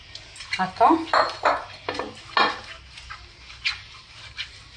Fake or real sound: real